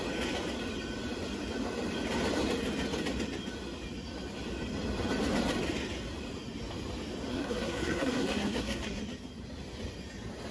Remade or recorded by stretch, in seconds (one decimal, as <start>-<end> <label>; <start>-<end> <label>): 0.0-7.3 recorded; 7.3-9.0 remade; 9.0-10.5 recorded